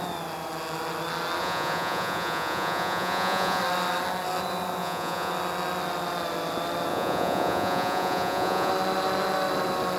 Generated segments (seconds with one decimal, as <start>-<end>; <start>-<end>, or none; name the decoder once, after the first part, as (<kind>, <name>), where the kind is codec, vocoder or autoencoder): 1.4-3.6 (vocoder, Vocos); 4.8-5.3; 6.9-8.7